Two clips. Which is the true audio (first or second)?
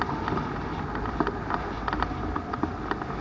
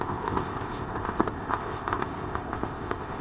first